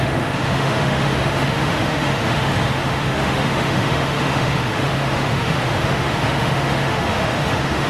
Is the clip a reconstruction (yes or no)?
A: yes